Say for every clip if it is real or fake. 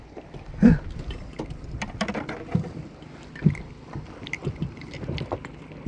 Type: real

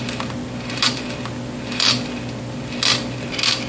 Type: real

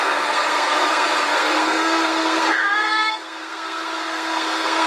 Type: fake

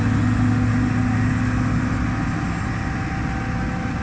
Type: real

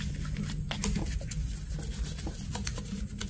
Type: real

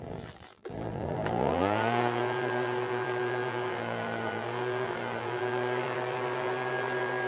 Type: fake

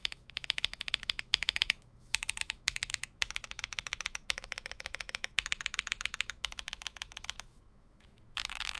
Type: fake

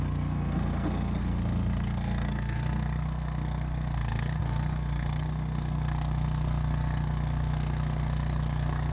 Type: fake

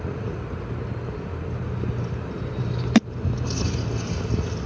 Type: real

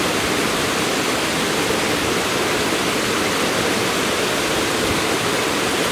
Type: real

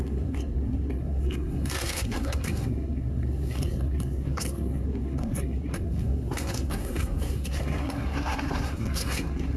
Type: fake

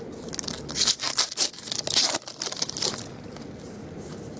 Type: real